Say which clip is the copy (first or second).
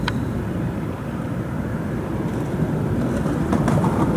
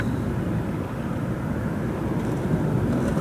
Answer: first